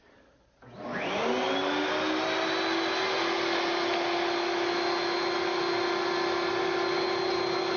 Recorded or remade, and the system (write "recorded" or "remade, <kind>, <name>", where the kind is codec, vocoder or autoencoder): recorded